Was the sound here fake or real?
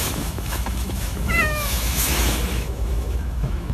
fake